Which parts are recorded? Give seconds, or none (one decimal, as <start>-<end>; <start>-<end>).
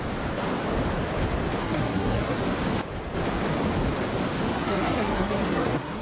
0.0-1.6; 2.4-4.5